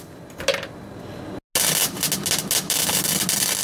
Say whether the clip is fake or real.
real